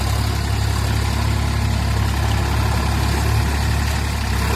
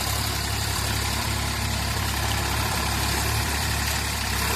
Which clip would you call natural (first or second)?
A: first